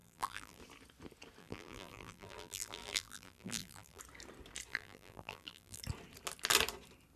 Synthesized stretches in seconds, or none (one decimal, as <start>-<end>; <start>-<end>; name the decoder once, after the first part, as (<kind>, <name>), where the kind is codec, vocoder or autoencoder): 0.0-0.6 (vocoder, BigVGAN v2); 1.4-4.0; 4.7-5.8

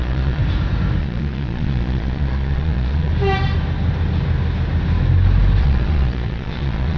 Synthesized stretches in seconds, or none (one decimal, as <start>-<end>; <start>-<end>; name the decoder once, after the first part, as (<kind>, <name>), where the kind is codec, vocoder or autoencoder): 0.0-0.4 (vocoder, Vocos); 1.0-3.1; 5.6-7.0

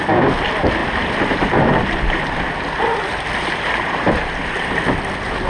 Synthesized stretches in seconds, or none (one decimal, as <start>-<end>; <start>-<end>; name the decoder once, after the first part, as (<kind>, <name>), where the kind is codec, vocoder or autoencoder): none

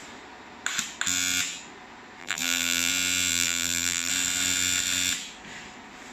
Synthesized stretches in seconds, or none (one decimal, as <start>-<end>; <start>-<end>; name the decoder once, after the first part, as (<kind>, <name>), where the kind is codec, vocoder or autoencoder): 2.2-2.9 (vocoder, BigVGAN v2); 3.3-4.1

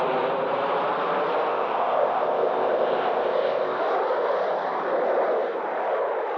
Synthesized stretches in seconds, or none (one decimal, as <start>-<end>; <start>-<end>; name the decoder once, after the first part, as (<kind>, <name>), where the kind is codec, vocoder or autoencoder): 1.5-3.8 (codec, ZipCodec)